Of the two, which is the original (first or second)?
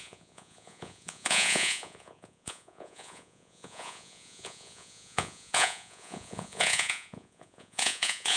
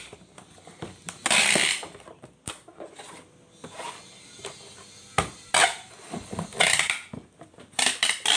second